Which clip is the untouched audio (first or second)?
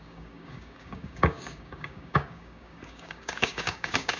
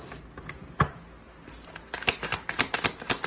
second